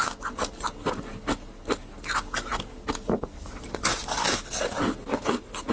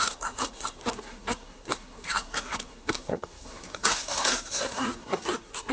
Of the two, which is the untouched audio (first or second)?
first